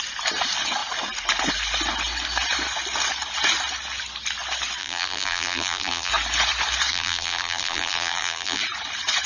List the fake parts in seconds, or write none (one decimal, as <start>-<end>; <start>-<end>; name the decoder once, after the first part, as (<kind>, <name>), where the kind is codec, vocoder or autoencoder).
4.8-6.1 (vocoder, BigVGAN v2); 6.9-8.6